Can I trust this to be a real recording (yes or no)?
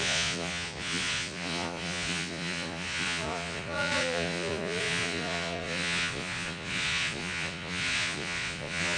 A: no